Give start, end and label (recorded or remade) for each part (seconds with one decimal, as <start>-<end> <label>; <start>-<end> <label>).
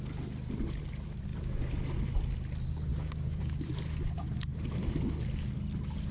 0.0-2.9 recorded; 2.9-3.7 remade; 3.7-6.1 recorded